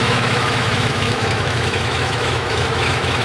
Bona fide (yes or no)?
no